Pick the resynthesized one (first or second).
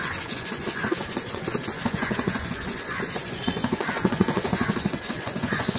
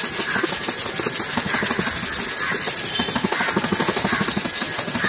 first